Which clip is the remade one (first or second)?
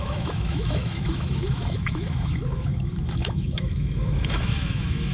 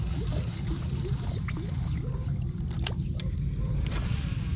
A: first